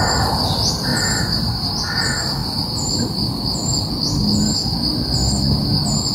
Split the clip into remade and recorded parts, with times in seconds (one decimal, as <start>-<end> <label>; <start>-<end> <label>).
0.0-0.9 recorded; 0.9-1.7 remade; 1.7-6.1 recorded